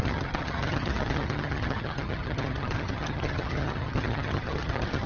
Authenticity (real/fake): fake